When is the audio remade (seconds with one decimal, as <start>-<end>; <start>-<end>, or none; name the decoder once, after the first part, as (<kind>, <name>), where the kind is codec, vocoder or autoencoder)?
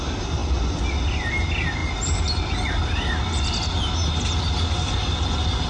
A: none